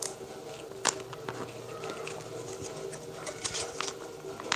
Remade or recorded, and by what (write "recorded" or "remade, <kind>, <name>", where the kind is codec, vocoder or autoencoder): recorded